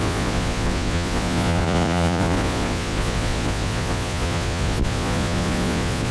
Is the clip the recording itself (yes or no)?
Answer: no